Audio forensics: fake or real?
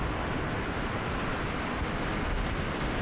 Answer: real